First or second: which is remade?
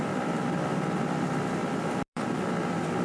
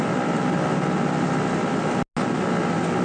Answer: first